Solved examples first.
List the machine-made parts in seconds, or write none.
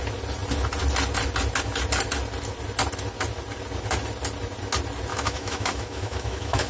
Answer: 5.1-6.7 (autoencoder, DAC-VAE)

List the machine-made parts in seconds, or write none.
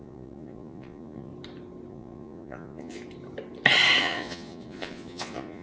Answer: 0.0-1.3 (vocoder, Vocos); 1.9-3.0; 4.0-5.6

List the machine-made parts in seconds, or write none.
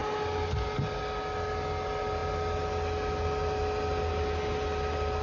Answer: none